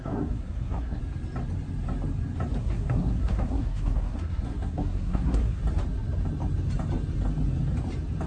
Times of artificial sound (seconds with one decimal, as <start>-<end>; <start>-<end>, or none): 0.0-1.0; 2.6-5.6